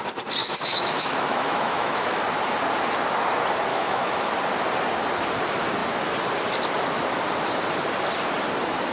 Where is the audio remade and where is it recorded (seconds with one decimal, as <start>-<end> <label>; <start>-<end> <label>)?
0.0-0.4 recorded; 0.4-2.2 remade; 2.2-3.7 recorded; 3.7-4.3 remade; 4.3-8.9 recorded